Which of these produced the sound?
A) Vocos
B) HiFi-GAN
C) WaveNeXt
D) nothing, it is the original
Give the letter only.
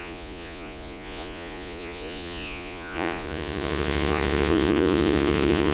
A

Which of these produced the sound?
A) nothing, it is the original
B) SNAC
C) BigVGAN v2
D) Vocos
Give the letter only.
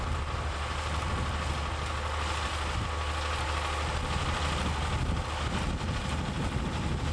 A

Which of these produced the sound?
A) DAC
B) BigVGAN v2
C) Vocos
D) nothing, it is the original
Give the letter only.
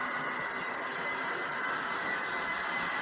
D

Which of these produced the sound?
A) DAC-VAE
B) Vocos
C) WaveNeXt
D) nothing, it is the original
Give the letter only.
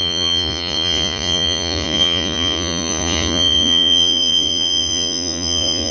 B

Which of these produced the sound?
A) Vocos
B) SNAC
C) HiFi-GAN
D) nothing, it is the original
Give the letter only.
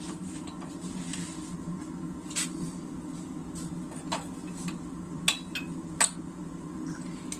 D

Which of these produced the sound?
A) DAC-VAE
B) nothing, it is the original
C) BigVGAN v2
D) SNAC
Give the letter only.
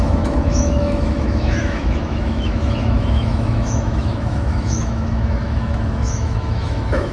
A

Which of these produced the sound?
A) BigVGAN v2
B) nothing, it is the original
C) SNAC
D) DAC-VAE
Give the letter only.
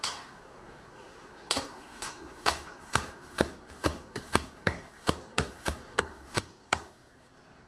C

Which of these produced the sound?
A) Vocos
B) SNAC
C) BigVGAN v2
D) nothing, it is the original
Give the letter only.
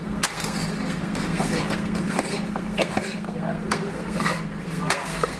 B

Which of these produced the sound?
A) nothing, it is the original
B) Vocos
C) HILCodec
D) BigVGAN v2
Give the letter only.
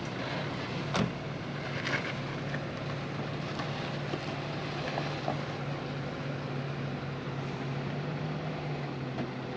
A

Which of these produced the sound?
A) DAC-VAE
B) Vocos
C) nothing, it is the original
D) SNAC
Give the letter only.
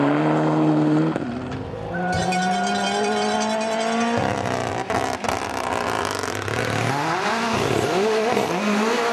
C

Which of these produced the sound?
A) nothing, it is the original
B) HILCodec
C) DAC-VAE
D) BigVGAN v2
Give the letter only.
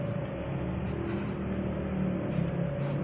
A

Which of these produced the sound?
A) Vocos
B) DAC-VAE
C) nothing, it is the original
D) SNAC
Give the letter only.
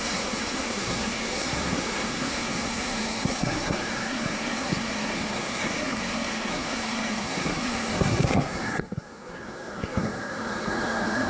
D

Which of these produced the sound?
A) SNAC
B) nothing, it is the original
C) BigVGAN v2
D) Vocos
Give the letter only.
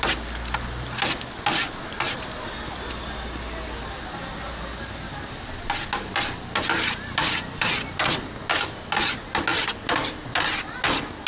B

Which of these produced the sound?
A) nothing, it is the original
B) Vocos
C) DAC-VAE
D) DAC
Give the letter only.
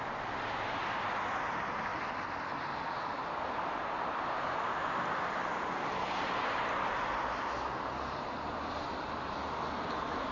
A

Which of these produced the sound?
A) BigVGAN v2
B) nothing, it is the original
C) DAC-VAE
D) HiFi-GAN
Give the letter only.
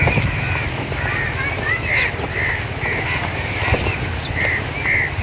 B